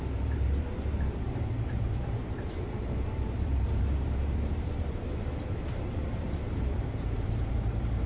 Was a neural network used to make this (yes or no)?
yes